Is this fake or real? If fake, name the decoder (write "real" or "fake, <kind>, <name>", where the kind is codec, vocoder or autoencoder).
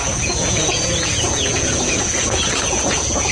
fake, vocoder, Vocos